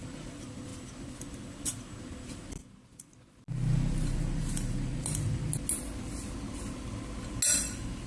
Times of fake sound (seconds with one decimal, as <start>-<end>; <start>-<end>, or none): none